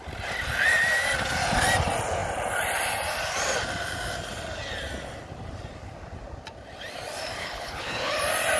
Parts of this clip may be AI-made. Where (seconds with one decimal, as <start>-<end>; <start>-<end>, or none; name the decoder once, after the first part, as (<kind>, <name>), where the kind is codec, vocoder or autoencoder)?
7.4-8.1 (codec, HILCodec)

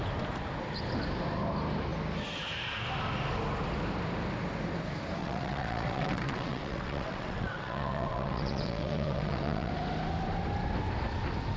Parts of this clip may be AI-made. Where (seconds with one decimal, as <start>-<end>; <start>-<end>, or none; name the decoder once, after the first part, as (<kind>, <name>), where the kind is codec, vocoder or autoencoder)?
5.2-9.7 (vocoder, WaveNeXt)

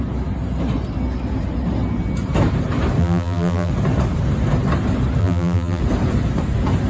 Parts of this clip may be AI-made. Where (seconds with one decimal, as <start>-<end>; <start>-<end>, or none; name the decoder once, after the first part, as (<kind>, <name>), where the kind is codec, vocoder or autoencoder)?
3.0-3.7 (vocoder, BigVGAN v2); 5.2-5.8

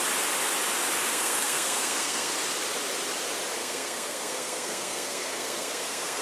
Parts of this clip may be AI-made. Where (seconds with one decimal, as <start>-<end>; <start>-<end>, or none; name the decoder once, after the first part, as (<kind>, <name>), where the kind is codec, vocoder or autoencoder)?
1.1-2.3 (codec, SNAC); 3.6-6.2

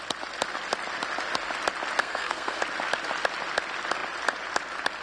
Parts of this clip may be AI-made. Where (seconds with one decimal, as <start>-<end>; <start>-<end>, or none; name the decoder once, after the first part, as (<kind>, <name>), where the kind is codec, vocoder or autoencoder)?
2.0-2.6 (codec, SNAC)

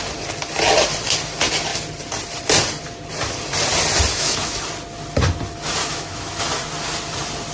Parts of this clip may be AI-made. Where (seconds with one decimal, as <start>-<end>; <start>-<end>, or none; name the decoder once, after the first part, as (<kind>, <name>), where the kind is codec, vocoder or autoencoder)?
4.1-4.6 (autoencoder, DAC-VAE); 5.8-6.4

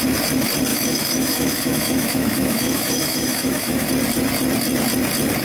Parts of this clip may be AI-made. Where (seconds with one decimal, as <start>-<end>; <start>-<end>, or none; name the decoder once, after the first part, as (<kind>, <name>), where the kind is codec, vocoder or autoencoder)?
0.7-3.9 (autoencoder, DAC-VAE)

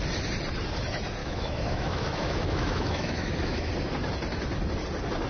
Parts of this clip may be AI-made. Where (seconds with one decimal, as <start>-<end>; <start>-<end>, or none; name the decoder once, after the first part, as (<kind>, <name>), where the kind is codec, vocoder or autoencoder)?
1.2-3.7 (autoencoder, DAC-VAE)